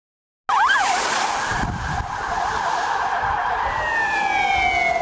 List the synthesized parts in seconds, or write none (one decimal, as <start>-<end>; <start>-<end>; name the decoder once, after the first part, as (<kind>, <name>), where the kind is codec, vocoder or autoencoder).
1.5-4.5 (vocoder, BigVGAN v2)